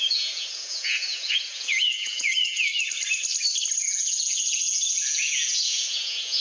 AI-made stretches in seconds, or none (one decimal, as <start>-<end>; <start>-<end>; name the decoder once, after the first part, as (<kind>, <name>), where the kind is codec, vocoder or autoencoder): 0.0-2.7 (vocoder, Vocos); 3.8-6.4